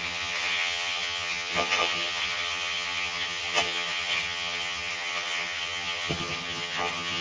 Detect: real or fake fake